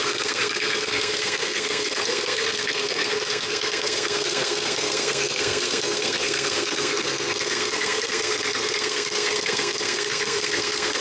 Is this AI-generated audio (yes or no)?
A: yes